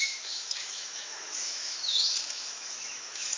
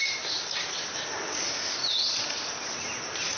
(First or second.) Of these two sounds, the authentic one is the second